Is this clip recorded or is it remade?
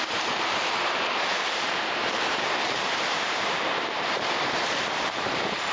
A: remade